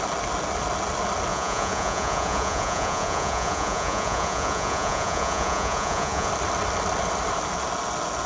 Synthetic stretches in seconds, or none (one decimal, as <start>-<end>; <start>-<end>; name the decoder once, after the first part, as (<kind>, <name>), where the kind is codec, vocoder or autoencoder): 1.3-6.3 (vocoder, Vocos)